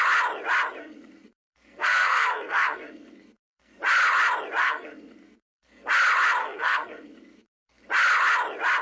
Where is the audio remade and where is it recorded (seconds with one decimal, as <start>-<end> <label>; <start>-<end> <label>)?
0.0-0.8 recorded; 0.8-3.8 remade; 3.8-4.6 recorded; 4.6-5.9 remade; 5.9-6.4 recorded; 6.4-7.9 remade; 7.9-8.8 recorded